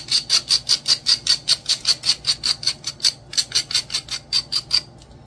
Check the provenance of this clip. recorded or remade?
recorded